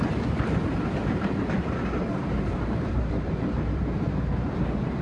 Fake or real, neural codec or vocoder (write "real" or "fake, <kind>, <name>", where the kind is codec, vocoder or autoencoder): fake, vocoder, BigVGAN v2